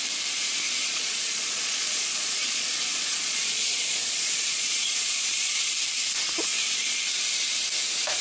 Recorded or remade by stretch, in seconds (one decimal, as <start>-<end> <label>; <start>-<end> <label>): 0.0-0.8 recorded; 0.8-5.7 remade; 5.7-6.5 recorded; 6.5-7.0 remade; 7.0-8.2 recorded